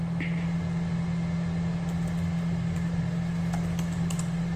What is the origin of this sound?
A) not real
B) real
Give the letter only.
B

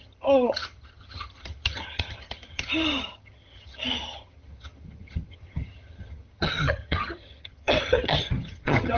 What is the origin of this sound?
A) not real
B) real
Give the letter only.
A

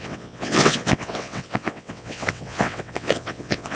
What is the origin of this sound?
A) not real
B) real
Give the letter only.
A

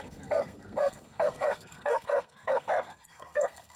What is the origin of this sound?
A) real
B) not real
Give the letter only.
B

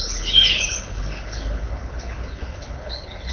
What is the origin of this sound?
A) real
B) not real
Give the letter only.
B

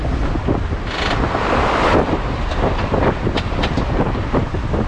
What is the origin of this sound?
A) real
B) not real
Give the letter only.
A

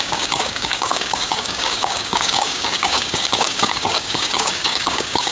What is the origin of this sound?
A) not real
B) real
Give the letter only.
A